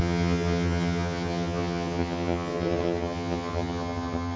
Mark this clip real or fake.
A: fake